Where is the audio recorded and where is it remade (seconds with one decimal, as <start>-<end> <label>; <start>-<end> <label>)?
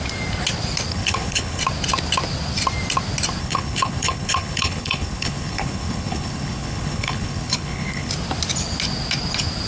0.0-0.9 recorded; 0.9-1.6 remade; 1.6-3.4 recorded; 3.4-8.1 remade; 8.1-9.7 recorded